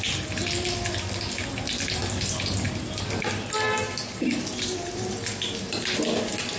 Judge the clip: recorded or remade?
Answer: recorded